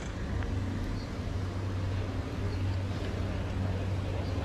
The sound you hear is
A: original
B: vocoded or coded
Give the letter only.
A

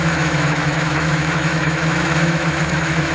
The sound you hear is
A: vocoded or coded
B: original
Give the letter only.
A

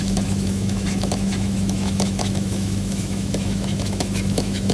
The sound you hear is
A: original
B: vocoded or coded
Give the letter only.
B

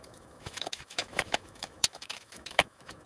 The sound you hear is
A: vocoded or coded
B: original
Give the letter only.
A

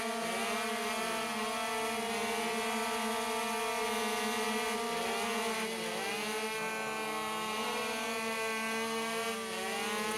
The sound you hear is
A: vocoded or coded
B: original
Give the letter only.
B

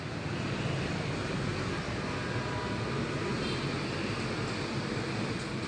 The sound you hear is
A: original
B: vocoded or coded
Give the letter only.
A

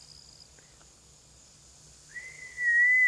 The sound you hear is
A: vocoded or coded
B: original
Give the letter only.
B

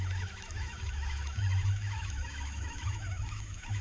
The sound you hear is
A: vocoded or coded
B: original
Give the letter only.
A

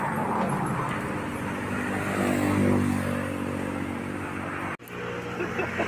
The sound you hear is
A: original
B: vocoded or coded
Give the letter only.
A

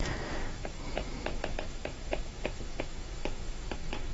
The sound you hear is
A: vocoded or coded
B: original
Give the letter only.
A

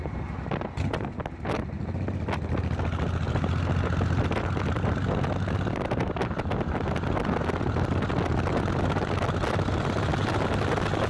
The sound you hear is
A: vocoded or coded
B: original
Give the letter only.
B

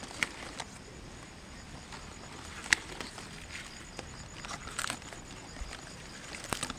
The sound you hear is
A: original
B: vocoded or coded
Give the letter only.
A